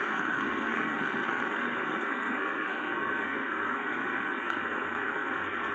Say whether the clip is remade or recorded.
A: remade